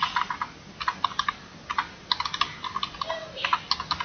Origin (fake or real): real